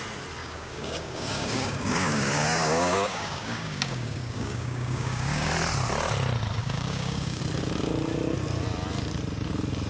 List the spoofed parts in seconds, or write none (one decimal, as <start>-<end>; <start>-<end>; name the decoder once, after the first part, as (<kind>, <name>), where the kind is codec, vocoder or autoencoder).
0.4-5.5 (codec, DAC); 6.6-7.4